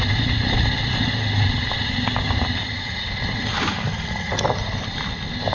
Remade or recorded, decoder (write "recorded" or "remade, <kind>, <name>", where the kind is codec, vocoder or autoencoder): recorded